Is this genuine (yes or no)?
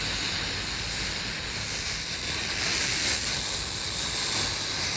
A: yes